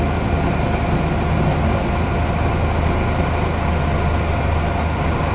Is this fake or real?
real